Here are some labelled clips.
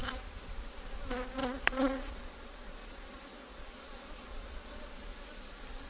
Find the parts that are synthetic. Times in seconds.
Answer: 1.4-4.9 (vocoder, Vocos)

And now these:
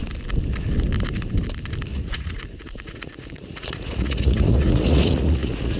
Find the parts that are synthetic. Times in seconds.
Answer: 1.9-5.8 (vocoder, Vocos)